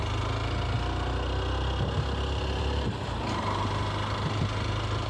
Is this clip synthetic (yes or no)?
no